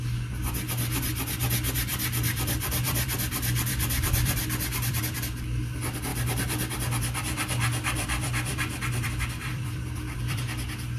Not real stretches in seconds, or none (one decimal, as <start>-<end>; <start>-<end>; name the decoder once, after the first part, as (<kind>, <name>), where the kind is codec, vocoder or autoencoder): 1.9-5.0 (vocoder, BigVGAN v2); 6.1-9.1; 9.5-10.4

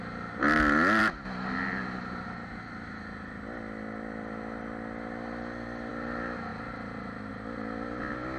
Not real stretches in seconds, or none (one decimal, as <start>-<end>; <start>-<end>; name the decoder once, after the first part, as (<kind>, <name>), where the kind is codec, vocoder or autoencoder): none